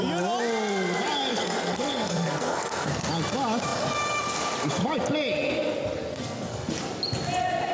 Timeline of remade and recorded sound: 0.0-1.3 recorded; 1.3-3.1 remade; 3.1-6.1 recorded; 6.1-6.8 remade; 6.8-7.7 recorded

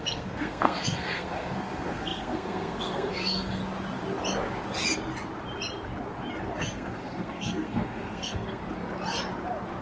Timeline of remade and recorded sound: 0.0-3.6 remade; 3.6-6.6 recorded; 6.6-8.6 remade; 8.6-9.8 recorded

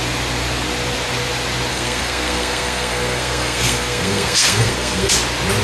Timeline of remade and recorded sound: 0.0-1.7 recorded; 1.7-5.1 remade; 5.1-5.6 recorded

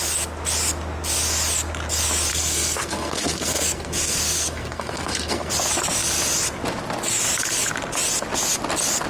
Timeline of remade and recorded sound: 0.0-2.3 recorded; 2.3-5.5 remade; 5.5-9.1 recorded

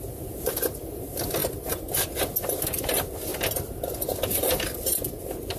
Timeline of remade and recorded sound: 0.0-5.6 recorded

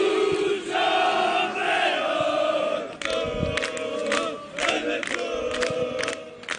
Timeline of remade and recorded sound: 0.0-6.6 recorded